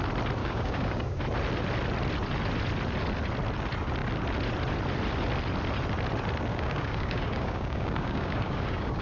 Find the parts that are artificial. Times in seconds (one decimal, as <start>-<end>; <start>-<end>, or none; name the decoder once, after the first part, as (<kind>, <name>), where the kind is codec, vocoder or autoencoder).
0.4-1.2 (codec, DAC); 6.5-9.0